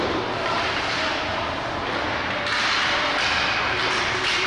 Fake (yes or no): no